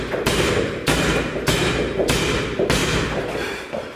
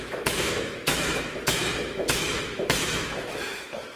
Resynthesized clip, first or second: second